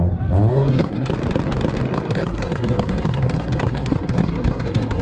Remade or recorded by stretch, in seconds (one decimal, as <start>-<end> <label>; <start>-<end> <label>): 0.0-0.5 recorded; 0.5-1.1 remade; 1.1-1.9 recorded; 1.9-5.0 remade